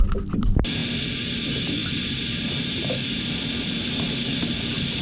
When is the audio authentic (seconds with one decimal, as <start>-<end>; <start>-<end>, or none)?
0.0-5.0